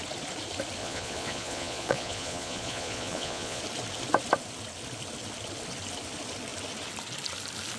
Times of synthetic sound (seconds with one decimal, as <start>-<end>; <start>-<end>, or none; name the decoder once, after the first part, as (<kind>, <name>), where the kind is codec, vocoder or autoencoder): 0.8-3.6 (vocoder, Vocos)